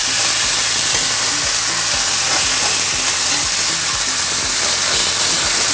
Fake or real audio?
real